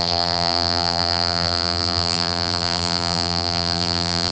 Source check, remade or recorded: remade